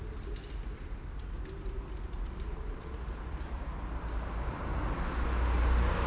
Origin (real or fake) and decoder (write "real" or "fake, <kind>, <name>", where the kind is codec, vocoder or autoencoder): real